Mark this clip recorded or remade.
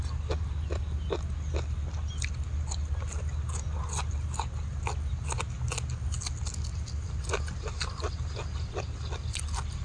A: recorded